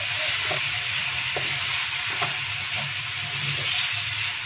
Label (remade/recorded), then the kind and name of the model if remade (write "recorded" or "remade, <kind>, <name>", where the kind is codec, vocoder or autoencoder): recorded